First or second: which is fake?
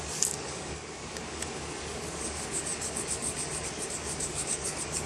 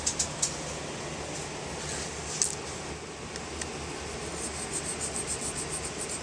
first